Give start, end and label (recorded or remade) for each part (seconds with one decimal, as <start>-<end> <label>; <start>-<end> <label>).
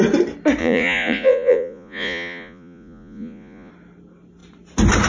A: 0.0-0.6 recorded; 0.6-3.7 remade; 3.7-5.1 recorded